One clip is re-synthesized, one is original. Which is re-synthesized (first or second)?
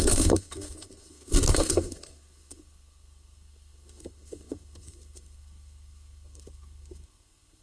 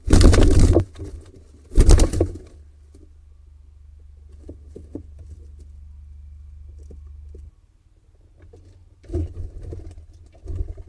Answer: first